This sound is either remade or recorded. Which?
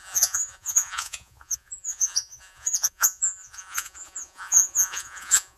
remade